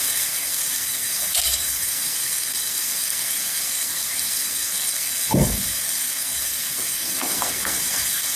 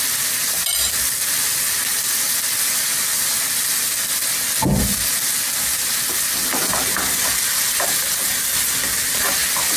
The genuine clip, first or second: second